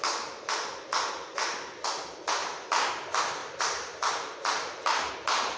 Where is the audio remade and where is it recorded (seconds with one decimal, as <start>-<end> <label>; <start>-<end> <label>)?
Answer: 0.0-2.4 recorded; 2.4-2.9 remade; 2.9-3.4 recorded; 3.4-5.1 remade; 5.1-5.6 recorded